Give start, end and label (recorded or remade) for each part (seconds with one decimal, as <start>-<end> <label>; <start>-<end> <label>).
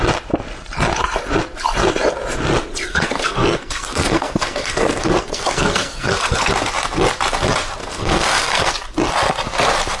0.0-2.9 recorded; 2.9-6.5 remade; 6.5-7.8 recorded; 7.8-8.7 remade; 8.7-10.0 recorded